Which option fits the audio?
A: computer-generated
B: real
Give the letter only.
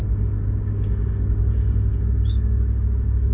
A